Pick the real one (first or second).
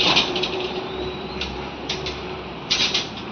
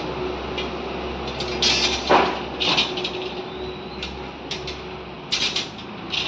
second